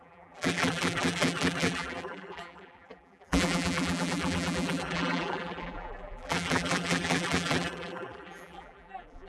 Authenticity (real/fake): fake